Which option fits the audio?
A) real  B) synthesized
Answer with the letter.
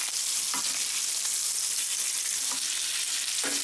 A